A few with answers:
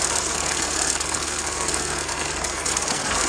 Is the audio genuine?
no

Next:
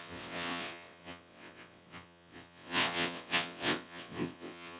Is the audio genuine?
no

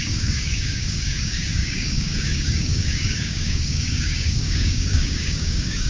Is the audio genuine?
no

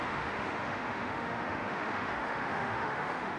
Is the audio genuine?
no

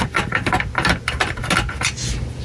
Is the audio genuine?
yes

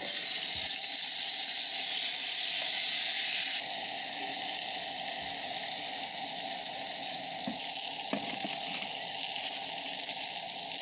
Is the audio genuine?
yes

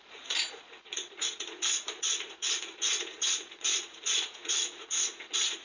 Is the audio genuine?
no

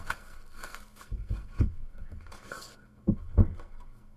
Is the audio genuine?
no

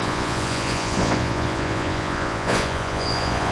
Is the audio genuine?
no